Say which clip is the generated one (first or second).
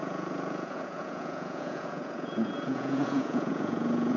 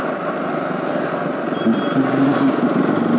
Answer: first